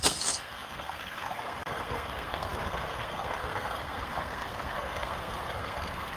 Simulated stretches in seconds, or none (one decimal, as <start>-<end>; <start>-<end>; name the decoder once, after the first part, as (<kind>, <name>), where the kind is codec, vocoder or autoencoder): 0.0-6.2 (codec, SNAC)